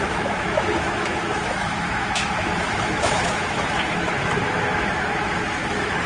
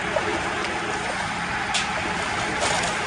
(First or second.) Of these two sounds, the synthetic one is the first